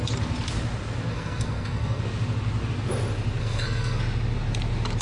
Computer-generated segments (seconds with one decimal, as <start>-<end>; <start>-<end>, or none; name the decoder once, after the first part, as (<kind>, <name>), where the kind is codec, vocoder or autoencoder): 1.1-2.0 (codec, SNAC); 3.4-4.0